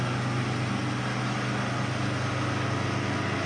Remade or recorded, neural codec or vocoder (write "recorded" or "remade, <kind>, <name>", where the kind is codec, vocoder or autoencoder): recorded